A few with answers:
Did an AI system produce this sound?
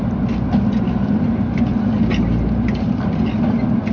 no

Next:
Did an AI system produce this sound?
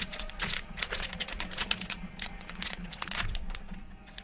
yes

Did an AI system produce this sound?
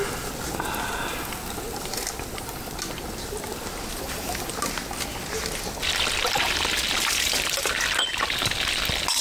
no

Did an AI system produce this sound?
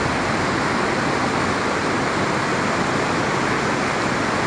no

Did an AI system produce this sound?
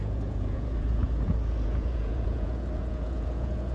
yes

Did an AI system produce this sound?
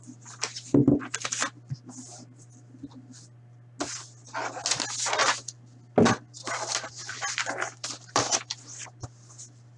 no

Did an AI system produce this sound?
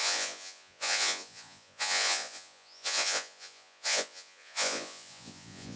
yes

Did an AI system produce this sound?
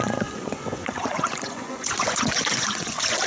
yes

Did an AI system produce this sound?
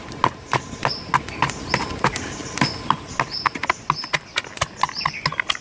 no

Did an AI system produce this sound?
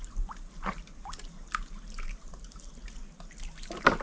no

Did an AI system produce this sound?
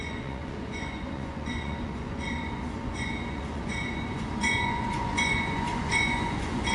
yes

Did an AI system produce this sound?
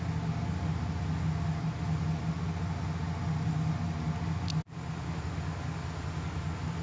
no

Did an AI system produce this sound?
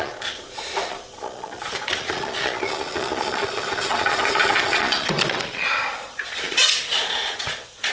yes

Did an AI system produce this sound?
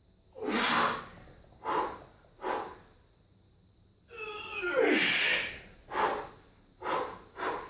no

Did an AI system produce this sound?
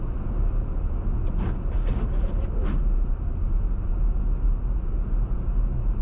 no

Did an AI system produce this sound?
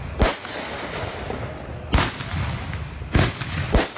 no